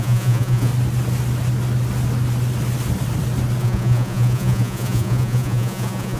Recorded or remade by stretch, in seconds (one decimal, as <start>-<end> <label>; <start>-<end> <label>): 0.0-0.7 remade; 0.7-3.6 recorded; 3.6-6.2 remade